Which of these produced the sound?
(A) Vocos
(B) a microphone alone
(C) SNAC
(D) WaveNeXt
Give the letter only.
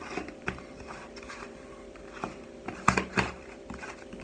B